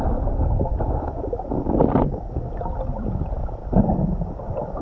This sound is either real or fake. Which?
real